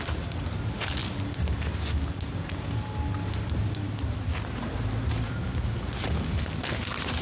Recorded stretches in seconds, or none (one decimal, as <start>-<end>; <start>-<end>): 0.0-7.2